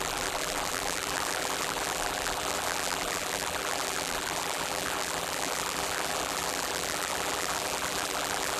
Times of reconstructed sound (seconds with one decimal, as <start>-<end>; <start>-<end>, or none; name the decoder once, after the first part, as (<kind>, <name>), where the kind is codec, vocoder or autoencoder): 0.0-8.6 (vocoder, BigVGAN v2)